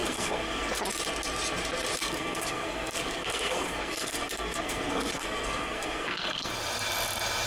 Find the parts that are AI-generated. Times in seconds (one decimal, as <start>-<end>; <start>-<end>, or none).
0.0-0.8; 2.0-6.5